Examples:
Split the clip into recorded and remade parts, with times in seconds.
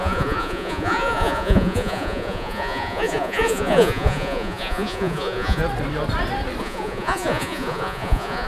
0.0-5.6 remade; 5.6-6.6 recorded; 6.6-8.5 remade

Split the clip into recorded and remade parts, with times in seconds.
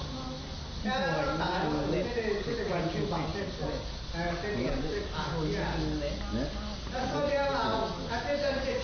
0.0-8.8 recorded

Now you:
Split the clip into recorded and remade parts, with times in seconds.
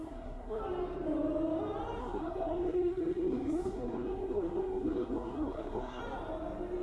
0.0-0.6 remade; 0.6-2.0 recorded; 2.0-6.0 remade; 6.0-6.8 recorded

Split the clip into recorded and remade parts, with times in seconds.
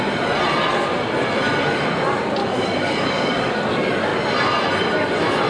0.0-2.4 recorded; 2.4-3.5 remade; 3.5-5.5 recorded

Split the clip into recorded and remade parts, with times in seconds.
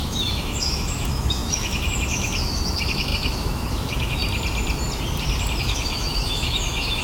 0.0-4.2 remade; 4.2-5.6 recorded; 5.6-7.0 remade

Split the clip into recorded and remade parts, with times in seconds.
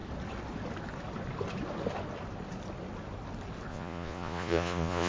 0.0-3.7 recorded; 3.7-5.1 remade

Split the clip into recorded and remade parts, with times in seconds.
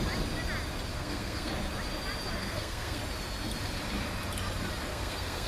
0.0-0.9 recorded; 0.9-1.5 remade; 1.5-2.4 recorded; 2.4-3.0 remade; 3.0-4.9 recorded; 4.9-5.5 remade